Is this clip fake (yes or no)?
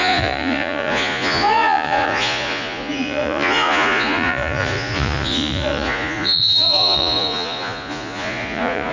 yes